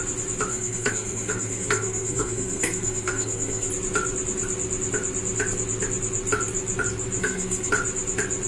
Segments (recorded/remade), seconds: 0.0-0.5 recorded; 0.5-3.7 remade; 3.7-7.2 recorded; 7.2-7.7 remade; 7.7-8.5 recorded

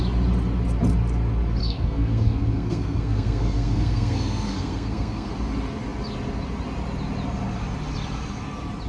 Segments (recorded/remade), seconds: 0.0-1.6 recorded; 1.6-5.3 remade; 5.3-8.9 recorded

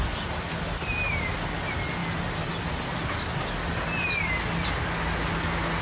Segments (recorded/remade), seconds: 0.0-5.8 recorded

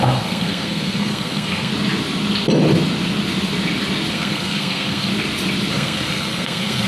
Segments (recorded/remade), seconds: 0.0-1.7 remade; 1.7-4.1 recorded; 4.1-5.1 remade; 5.1-5.7 recorded; 5.7-6.9 remade

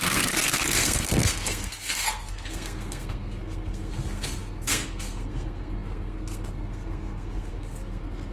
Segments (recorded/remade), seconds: 0.0-8.3 remade

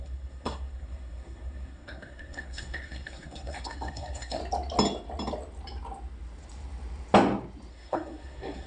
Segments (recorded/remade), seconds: 0.0-4.4 remade; 4.4-7.7 recorded; 7.7-8.7 remade